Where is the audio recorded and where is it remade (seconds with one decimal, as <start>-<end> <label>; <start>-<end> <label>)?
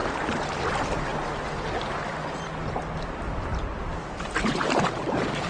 0.0-0.6 recorded; 0.6-1.1 remade; 1.1-2.3 recorded; 2.3-5.5 remade